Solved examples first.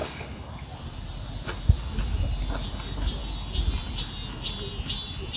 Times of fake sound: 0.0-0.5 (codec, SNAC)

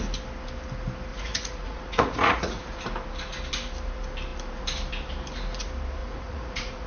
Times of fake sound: 1.1-2.6 (vocoder, Vocos); 6.0-6.9

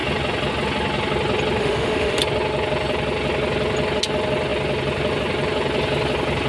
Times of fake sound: 1.6-2.2 (autoencoder, DAC-VAE)

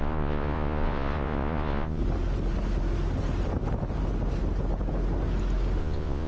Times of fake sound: 0.0-2.0 (vocoder, Vocos); 5.8-6.3